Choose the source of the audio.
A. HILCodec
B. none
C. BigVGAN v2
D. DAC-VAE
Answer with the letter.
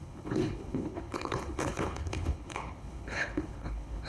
A